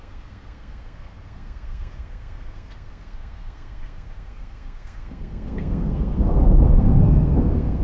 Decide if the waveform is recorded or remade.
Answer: remade